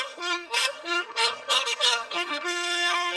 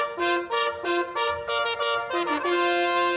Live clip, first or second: second